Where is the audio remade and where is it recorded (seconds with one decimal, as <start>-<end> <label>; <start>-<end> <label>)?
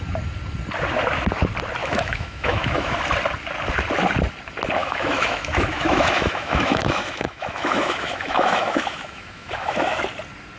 0.0-1.8 recorded; 1.8-3.0 remade; 3.0-4.8 recorded; 4.8-10.0 remade; 10.0-10.6 recorded